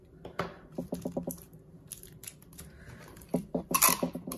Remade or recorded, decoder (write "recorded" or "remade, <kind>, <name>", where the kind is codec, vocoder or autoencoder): recorded